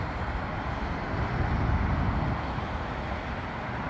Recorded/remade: recorded